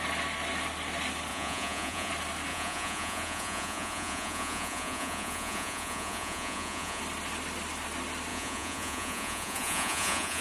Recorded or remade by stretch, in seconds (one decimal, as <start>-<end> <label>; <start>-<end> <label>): 0.0-1.3 recorded; 1.3-2.1 remade; 2.1-2.5 recorded; 2.5-7.0 remade; 7.0-8.3 recorded; 8.3-10.4 remade